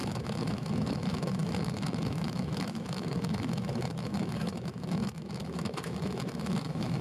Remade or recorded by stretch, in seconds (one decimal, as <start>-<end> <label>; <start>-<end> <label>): 0.0-7.0 remade